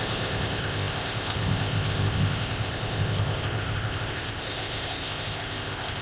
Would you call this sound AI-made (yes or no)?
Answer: yes